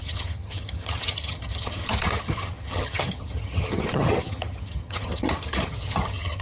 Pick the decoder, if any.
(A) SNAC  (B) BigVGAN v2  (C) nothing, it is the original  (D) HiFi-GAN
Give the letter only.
D